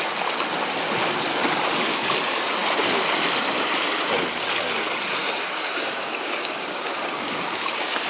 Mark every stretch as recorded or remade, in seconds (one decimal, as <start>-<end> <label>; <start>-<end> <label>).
0.0-5.2 recorded; 5.2-8.1 remade